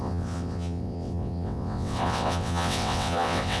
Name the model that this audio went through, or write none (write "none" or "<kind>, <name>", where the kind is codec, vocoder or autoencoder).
vocoder, WaveNeXt